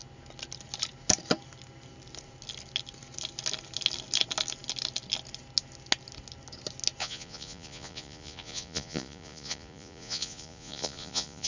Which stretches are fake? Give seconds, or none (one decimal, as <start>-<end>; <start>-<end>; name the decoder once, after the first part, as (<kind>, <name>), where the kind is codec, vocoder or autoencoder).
7.0-11.5 (vocoder, Vocos)